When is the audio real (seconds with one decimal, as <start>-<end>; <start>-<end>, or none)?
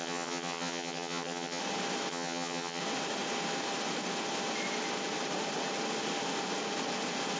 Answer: 1.6-2.1; 2.8-7.4